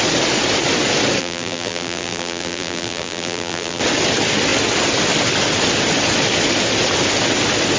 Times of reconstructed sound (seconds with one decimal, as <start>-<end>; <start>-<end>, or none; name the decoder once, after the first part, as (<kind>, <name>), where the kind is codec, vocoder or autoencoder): 1.2-3.8 (vocoder, BigVGAN v2)